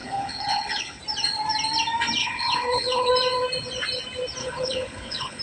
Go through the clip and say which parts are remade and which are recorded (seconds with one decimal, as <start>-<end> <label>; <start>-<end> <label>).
0.0-1.0 remade; 1.0-2.2 recorded; 2.2-3.1 remade; 3.1-4.4 recorded; 4.4-5.4 remade